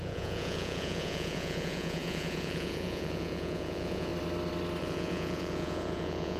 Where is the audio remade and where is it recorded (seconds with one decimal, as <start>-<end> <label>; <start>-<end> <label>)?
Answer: 0.0-4.1 remade; 4.1-4.8 recorded; 4.8-6.4 remade